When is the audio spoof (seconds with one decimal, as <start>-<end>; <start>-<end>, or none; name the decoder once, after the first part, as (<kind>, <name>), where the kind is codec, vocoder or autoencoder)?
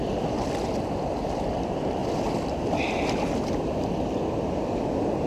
none